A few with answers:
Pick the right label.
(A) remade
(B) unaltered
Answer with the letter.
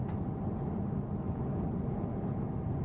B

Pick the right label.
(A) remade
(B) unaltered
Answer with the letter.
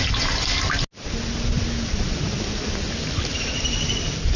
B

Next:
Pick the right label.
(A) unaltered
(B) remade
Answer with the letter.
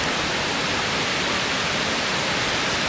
A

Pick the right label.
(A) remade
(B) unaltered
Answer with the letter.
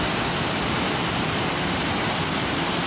B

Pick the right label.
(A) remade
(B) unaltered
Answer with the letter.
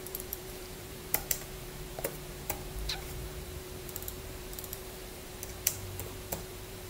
A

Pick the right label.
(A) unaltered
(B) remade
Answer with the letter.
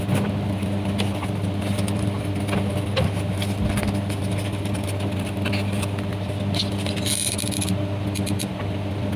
A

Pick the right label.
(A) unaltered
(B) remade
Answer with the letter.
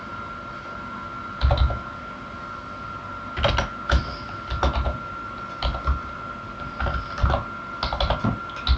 A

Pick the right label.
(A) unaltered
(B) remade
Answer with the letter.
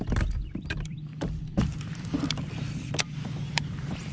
B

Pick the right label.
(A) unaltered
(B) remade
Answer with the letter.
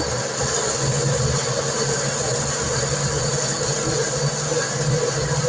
A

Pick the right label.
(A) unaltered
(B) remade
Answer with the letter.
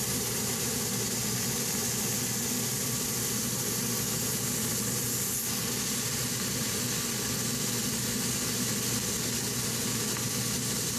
A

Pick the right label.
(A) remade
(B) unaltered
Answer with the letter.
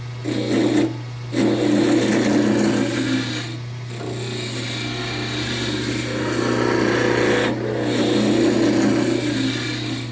B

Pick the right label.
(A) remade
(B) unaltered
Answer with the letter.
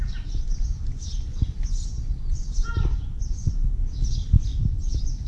B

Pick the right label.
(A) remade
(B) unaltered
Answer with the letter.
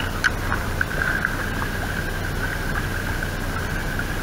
B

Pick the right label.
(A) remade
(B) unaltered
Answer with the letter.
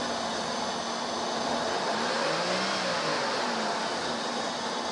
B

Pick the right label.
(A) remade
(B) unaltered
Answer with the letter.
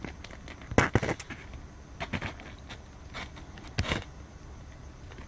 B